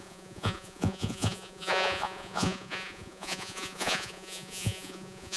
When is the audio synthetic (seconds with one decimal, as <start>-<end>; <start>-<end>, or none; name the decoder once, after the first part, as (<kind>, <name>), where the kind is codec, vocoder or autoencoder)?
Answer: 0.0-5.4 (vocoder, Vocos)